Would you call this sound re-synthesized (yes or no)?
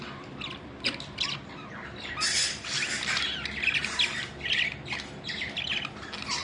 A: no